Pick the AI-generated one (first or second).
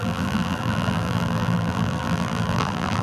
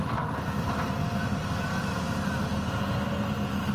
first